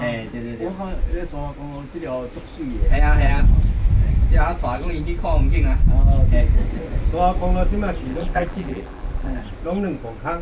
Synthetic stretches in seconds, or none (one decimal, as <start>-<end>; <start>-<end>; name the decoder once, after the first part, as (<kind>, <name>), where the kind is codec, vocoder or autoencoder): 8.1-9.4 (vocoder, BigVGAN v2)